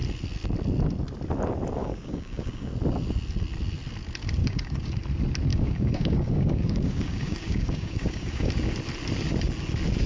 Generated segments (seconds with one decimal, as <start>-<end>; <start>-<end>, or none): 1.8-2.7; 4.4-5.0; 5.5-8.5